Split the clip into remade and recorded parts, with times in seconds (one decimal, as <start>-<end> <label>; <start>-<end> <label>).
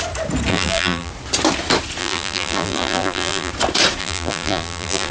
0.0-0.5 recorded; 0.5-1.1 remade; 1.1-2.0 recorded; 2.0-3.5 remade; 3.5-4.0 recorded; 4.0-5.1 remade